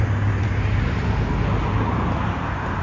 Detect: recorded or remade recorded